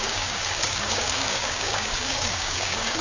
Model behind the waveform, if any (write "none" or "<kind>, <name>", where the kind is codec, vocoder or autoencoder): codec, DAC